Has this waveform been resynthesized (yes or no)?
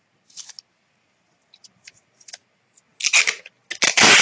no